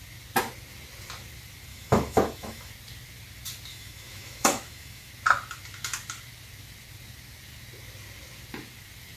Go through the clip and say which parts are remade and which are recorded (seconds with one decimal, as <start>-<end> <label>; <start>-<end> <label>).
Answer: 0.0-1.7 recorded; 1.7-2.7 remade; 2.7-3.7 recorded; 3.7-5.1 remade; 5.1-9.2 recorded